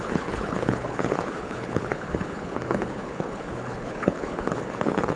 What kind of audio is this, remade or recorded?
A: remade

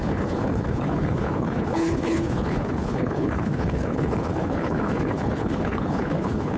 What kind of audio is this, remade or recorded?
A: remade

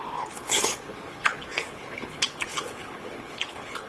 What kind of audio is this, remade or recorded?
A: remade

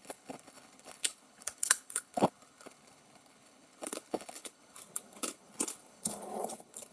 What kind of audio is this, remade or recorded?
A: remade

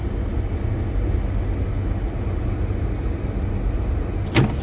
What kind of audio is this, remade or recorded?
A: recorded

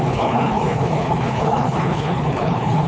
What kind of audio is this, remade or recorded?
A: remade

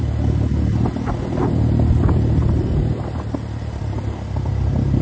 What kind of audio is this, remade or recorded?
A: recorded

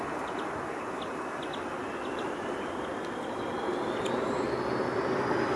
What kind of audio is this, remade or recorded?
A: recorded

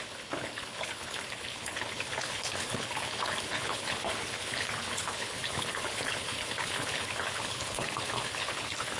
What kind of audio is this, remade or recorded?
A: remade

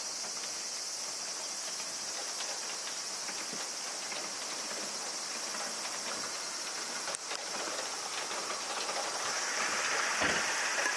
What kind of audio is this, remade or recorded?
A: recorded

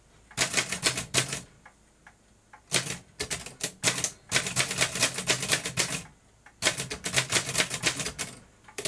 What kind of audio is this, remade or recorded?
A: recorded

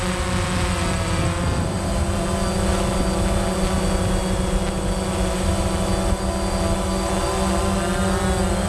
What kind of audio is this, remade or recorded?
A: recorded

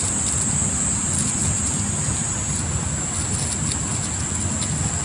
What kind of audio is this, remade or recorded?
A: recorded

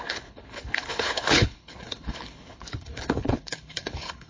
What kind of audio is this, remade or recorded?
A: remade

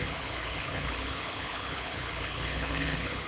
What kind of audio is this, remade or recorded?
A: remade